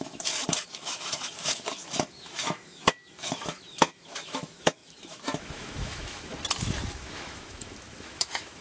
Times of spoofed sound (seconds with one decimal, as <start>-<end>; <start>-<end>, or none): 0.0-6.3; 6.9-8.6